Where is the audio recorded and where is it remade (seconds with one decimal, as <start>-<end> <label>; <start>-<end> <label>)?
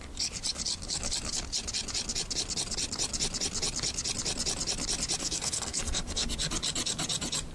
0.0-5.2 recorded; 5.2-6.3 remade; 6.3-7.5 recorded